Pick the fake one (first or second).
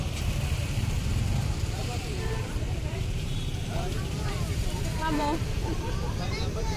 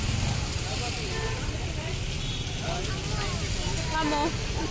first